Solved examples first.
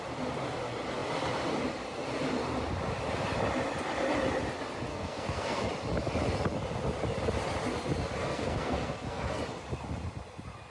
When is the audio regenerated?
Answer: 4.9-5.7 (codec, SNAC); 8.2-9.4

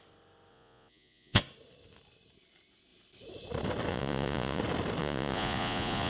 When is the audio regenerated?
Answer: 0.5-1.4 (vocoder, Vocos); 3.9-4.6; 5.0-6.1

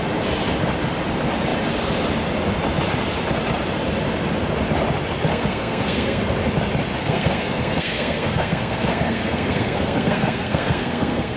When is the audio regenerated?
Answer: 5.3-6.2 (codec, SNAC); 7.0-11.4

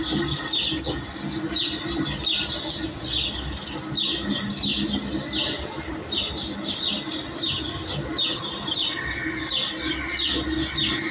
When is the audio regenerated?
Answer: none

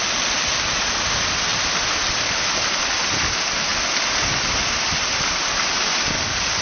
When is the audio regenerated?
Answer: 1.5-2.1 (vocoder, BigVGAN v2)

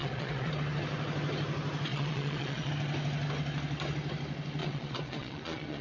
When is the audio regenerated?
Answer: 0.0-0.5 (vocoder, Vocos); 1.9-2.7; 4.6-5.8

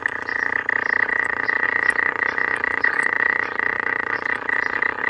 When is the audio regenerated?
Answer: 0.0-0.5 (vocoder, Vocos); 1.1-5.1

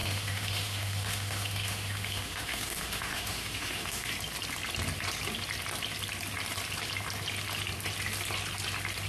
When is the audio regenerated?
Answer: 0.0-4.1 (autoencoder, DAC-VAE)